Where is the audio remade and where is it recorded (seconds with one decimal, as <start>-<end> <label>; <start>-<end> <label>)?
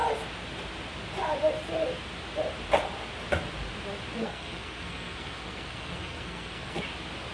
0.0-4.2 recorded; 4.2-6.8 remade; 6.8-7.3 recorded